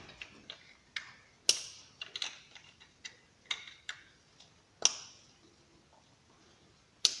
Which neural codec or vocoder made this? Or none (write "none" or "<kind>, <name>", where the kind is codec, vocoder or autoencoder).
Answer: none